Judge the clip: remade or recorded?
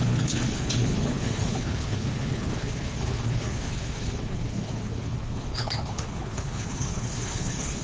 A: remade